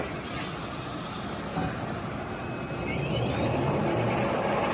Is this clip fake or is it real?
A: real